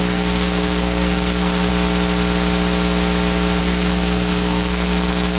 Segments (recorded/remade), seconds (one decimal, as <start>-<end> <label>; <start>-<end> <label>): 0.0-1.7 remade; 1.7-3.6 recorded; 3.6-5.4 remade